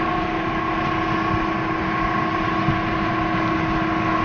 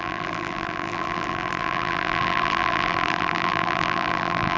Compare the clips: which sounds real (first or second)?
first